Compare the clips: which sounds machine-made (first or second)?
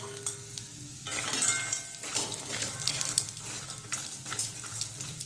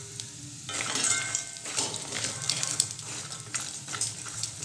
second